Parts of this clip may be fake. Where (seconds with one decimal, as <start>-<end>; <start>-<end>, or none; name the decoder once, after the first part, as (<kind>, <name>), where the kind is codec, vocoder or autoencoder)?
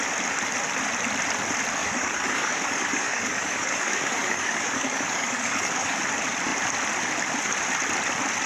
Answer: 1.8-6.0 (codec, DAC)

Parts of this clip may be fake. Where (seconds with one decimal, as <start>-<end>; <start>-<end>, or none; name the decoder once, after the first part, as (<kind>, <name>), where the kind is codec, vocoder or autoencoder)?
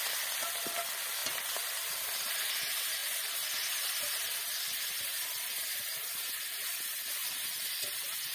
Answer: none